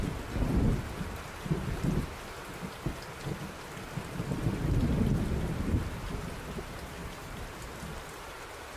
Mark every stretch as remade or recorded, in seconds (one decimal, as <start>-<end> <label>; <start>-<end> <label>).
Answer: 0.0-7.0 recorded; 7.0-8.8 remade